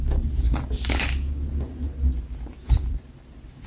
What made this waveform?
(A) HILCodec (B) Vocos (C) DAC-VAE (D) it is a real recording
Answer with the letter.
D